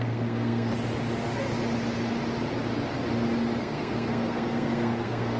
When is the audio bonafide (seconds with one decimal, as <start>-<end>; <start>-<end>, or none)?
0.7-3.6